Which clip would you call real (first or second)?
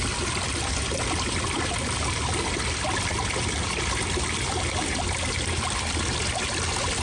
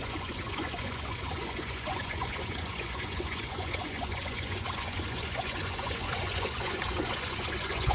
first